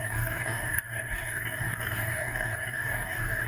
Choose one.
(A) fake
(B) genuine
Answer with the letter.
A